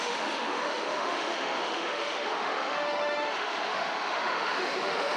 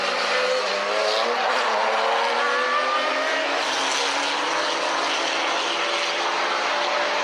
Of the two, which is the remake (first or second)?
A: first